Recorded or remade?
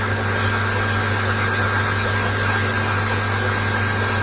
recorded